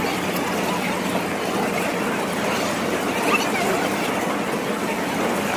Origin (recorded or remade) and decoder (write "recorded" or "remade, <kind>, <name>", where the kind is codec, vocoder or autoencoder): recorded